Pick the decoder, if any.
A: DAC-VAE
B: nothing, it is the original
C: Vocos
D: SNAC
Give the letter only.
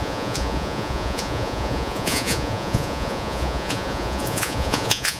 C